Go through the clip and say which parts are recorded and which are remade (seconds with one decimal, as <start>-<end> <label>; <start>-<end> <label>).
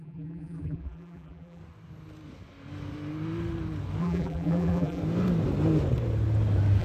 0.0-1.6 remade; 1.6-4.0 recorded; 4.0-5.0 remade; 5.0-6.8 recorded